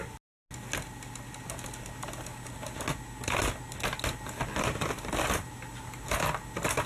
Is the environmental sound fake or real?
real